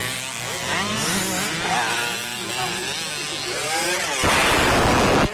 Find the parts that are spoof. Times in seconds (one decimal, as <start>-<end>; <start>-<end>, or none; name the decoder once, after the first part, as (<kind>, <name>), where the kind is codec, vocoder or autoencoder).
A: none